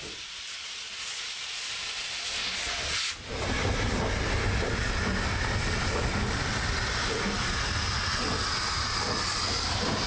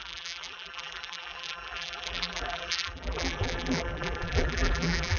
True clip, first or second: first